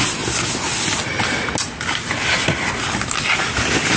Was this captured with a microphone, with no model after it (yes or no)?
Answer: yes